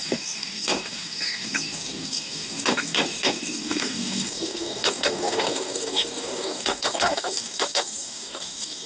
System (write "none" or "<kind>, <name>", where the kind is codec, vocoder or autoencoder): codec, DAC